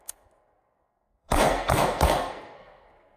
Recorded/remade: remade